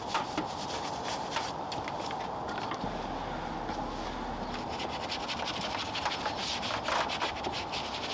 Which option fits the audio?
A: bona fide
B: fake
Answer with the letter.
A